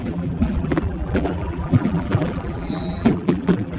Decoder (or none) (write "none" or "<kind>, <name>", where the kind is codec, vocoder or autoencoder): vocoder, BigVGAN v2